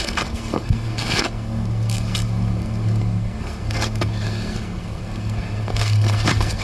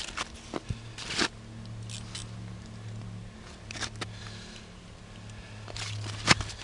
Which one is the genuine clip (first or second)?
second